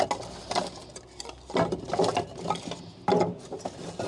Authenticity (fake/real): real